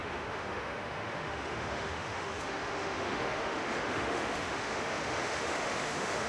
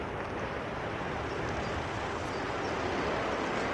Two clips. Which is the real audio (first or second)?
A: second